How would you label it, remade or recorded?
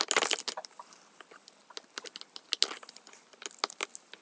recorded